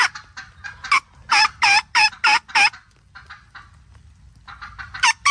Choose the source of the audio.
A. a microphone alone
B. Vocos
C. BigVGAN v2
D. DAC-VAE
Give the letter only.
A